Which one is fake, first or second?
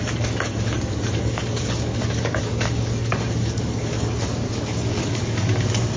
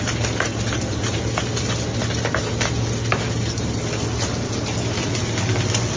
first